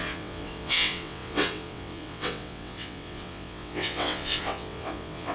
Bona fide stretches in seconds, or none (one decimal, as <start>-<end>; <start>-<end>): none

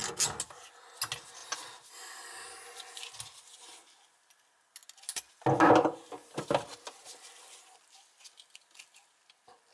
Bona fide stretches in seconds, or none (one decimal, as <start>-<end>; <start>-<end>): 0.0-9.7